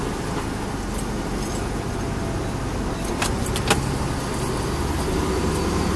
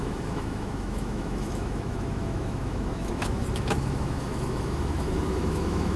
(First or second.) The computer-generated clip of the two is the second